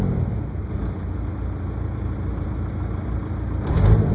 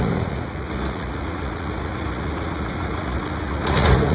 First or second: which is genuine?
first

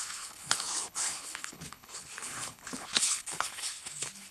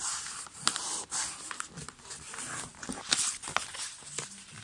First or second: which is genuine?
second